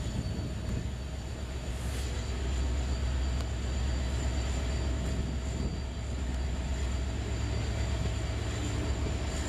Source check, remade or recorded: recorded